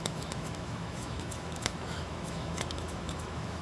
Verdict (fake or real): fake